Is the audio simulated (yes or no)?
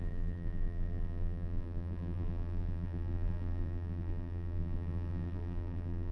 yes